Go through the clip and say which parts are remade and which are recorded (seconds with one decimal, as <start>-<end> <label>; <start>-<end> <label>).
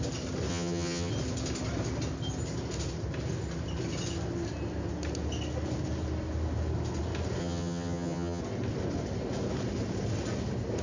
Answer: 0.0-0.5 recorded; 0.5-1.1 remade; 1.1-7.4 recorded; 7.4-8.4 remade; 8.4-10.8 recorded